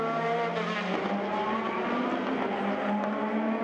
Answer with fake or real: real